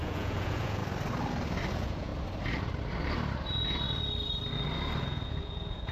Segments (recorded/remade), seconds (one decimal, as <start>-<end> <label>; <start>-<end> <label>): 0.0-0.8 remade; 0.8-1.7 recorded; 1.7-2.1 remade; 2.1-5.0 recorded; 5.0-5.9 remade